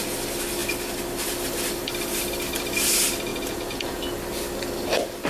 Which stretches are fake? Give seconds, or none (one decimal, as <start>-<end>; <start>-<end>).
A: 3.3-4.0